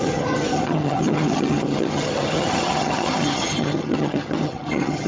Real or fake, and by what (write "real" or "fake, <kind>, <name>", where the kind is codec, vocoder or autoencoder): fake, vocoder, HiFi-GAN